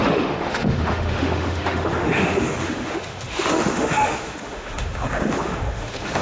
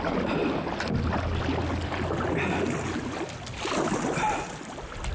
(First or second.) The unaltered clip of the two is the second